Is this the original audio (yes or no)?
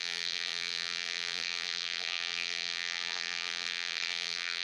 no